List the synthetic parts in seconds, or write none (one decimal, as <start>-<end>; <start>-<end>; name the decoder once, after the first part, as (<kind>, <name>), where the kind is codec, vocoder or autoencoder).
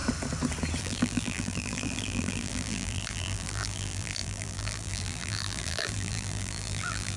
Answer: 0.8-7.2 (vocoder, BigVGAN v2)